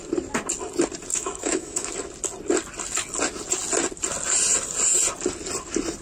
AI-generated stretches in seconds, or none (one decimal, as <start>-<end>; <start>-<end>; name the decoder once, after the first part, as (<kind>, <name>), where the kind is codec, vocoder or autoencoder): 1.1-1.9 (autoencoder, DAC-VAE)